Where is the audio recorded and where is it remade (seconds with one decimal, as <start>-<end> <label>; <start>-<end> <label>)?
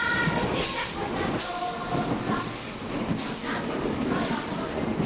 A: 0.0-5.1 recorded